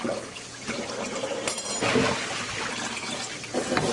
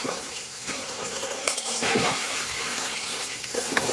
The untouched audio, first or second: first